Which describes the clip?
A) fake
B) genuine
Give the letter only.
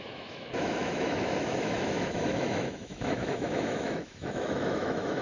A